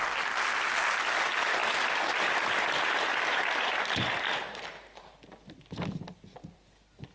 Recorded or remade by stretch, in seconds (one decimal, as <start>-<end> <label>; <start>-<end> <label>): 0.0-7.1 recorded